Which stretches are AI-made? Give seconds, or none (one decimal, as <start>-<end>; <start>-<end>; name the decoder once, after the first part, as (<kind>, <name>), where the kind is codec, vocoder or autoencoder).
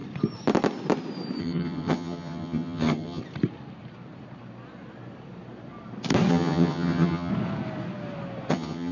1.4-3.2 (vocoder, HiFi-GAN); 6.3-7.3; 8.5-8.9